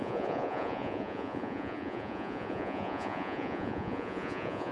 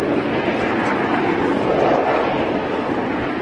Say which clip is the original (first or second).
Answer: second